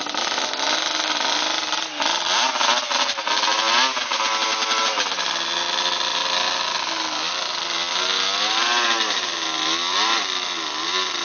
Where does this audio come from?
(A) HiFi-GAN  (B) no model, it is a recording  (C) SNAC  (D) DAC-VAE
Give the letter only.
B